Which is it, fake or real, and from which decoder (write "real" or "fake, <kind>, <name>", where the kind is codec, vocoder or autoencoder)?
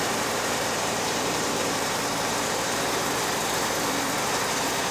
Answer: fake, vocoder, BigVGAN v2